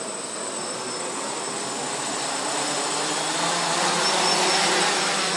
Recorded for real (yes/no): yes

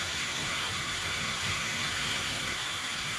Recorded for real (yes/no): no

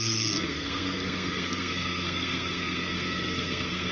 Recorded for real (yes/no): no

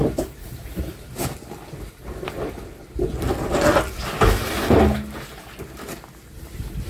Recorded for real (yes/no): yes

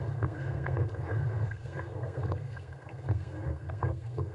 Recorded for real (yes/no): no